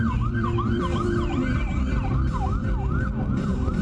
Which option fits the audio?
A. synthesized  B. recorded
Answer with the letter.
A